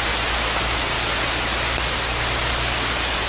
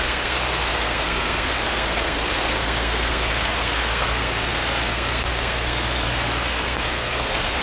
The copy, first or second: second